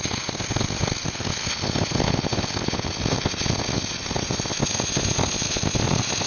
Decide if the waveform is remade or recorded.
recorded